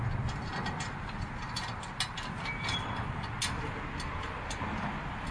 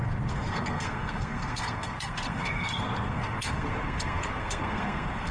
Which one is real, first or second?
first